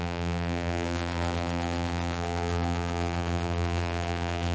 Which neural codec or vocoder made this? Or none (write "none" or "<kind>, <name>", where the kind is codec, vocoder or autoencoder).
vocoder, BigVGAN v2